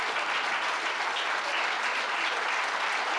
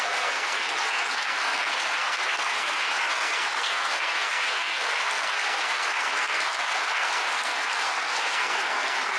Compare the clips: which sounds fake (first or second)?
second